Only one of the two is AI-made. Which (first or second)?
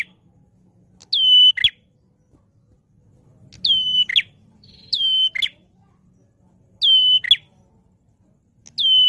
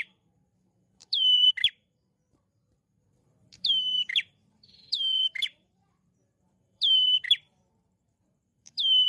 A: second